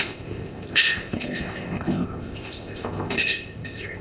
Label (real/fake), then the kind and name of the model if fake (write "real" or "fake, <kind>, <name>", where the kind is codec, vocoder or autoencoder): fake, codec, ZipCodec